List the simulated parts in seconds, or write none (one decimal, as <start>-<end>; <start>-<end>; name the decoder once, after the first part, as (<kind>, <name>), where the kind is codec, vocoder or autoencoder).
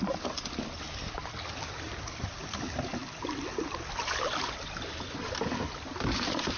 none